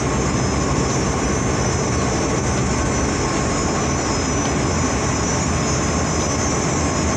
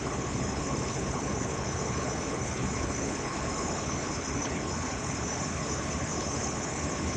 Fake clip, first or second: second